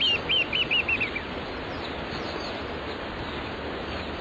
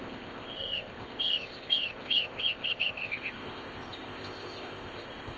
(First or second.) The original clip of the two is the first